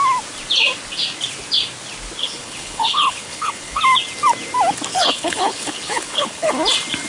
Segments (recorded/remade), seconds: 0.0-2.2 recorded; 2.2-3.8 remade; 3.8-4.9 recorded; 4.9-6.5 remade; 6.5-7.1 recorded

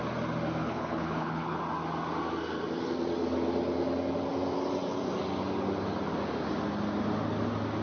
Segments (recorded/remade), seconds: 0.0-0.6 recorded; 0.6-1.6 remade; 1.6-7.8 recorded

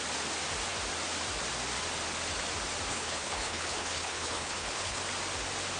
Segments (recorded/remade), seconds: 0.0-2.9 recorded; 2.9-5.0 remade; 5.0-5.8 recorded

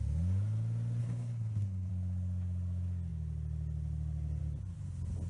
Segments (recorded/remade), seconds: 0.0-1.0 recorded; 1.0-1.9 remade; 1.9-5.3 recorded

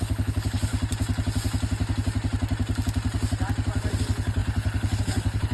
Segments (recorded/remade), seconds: 0.0-0.7 remade; 0.7-4.0 recorded; 4.0-5.5 remade

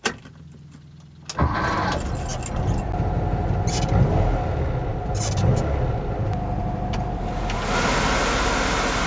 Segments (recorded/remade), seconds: 0.0-9.1 recorded

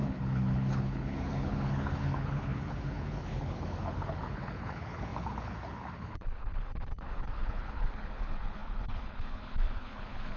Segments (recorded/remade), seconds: 0.0-10.4 remade